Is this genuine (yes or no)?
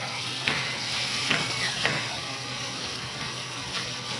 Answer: no